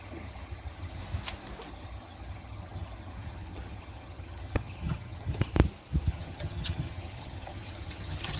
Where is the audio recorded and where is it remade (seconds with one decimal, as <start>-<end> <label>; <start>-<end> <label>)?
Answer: 0.0-1.0 remade; 1.0-1.7 recorded; 1.7-5.5 remade; 5.5-6.1 recorded; 6.1-8.4 remade